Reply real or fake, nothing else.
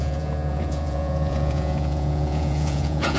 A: fake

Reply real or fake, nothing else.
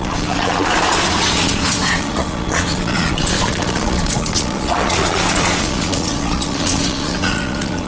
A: fake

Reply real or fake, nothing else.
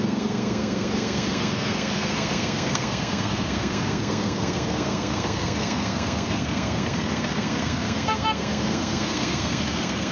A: fake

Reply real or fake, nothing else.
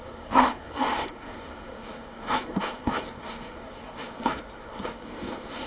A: fake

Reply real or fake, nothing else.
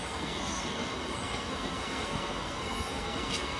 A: fake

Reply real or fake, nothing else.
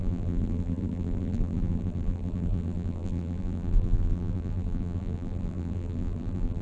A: fake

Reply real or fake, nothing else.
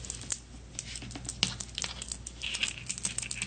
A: real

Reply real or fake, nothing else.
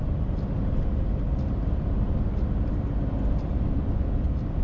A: real